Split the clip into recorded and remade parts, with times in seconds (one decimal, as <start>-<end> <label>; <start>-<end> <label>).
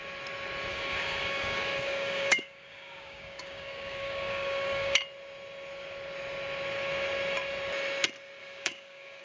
0.0-0.7 recorded; 0.7-5.0 remade; 5.0-8.4 recorded; 8.4-9.2 remade